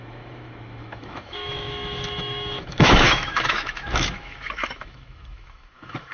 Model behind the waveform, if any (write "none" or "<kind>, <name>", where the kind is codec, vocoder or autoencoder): autoencoder, DAC-VAE